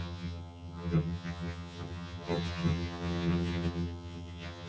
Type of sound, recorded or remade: remade